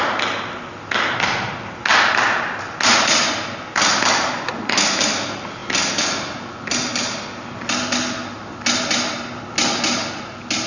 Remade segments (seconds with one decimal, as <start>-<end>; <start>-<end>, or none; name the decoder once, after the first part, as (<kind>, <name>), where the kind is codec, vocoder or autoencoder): none